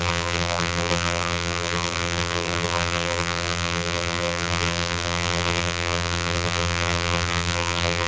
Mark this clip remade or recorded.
remade